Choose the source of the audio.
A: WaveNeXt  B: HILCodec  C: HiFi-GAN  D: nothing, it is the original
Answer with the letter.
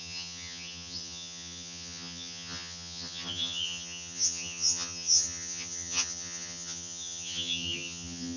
C